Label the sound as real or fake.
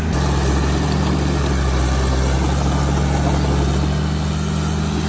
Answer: real